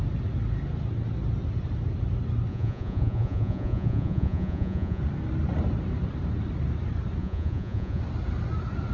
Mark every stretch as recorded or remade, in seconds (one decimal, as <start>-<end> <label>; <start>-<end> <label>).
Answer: 0.0-2.5 recorded; 2.5-5.0 remade; 5.0-7.2 recorded; 7.2-8.0 remade; 8.0-8.9 recorded